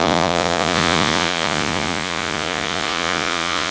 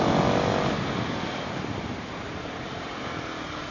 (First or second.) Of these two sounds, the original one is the second